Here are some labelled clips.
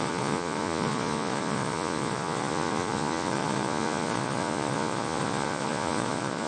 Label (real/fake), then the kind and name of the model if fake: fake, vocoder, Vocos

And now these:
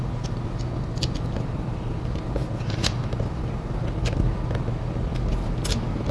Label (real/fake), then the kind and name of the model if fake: real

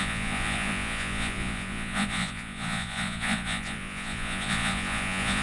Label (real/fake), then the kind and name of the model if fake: fake, vocoder, Vocos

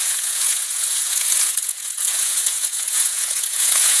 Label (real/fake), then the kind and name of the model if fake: fake, vocoder, Vocos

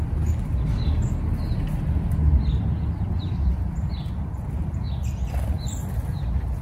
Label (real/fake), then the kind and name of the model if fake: real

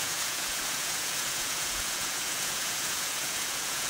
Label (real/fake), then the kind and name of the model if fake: fake, vocoder, Vocos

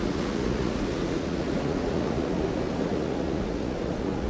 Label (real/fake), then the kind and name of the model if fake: fake, vocoder, Vocos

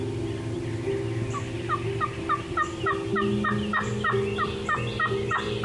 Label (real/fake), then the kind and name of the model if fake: real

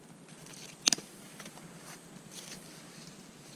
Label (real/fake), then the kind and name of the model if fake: real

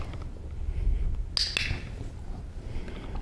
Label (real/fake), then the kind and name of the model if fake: real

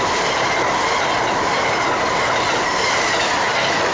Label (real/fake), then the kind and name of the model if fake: real